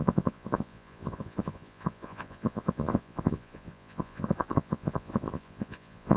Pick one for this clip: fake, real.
fake